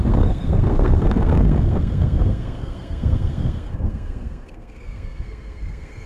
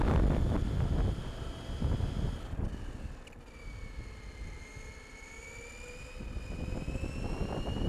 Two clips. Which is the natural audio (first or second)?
second